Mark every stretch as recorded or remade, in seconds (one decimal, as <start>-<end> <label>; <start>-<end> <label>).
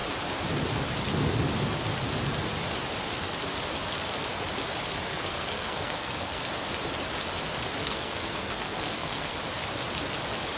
0.0-5.1 recorded; 5.1-6.4 remade; 6.4-7.8 recorded; 7.8-9.4 remade; 9.4-10.6 recorded